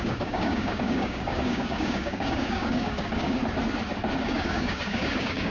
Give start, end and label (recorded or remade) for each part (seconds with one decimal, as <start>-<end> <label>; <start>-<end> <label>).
0.0-3.4 remade; 3.4-4.2 recorded; 4.2-5.5 remade